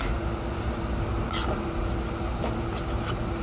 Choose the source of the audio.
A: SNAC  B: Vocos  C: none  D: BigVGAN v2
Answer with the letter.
C